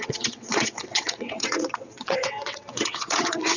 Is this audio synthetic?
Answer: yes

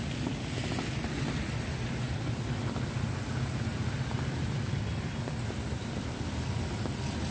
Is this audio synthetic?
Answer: no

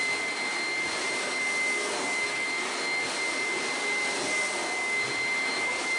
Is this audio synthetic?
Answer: no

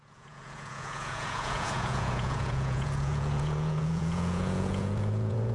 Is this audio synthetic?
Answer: yes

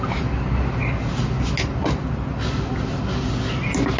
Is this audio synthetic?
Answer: no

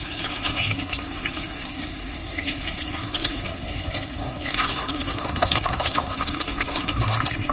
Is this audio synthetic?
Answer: yes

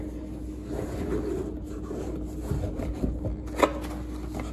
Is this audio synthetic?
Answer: no